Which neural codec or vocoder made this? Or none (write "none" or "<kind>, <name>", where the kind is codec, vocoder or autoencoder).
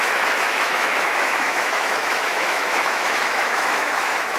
autoencoder, DAC-VAE